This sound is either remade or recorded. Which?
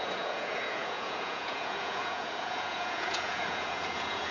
remade